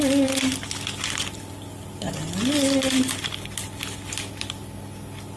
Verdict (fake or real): real